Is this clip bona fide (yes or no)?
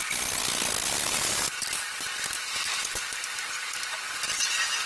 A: yes